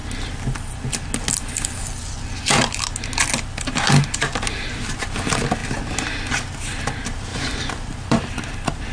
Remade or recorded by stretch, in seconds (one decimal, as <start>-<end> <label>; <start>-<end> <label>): 0.0-7.3 recorded; 7.3-8.3 remade; 8.3-8.9 recorded